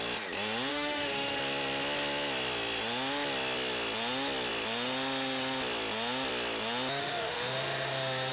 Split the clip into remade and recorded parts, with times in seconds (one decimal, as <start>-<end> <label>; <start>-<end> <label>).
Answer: 0.0-0.7 recorded; 0.7-1.4 remade; 1.4-7.0 recorded; 7.0-8.3 remade